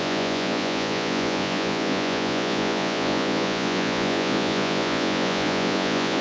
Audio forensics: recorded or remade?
remade